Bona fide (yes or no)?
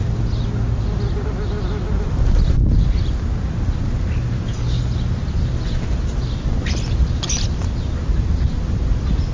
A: yes